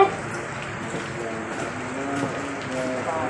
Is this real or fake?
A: real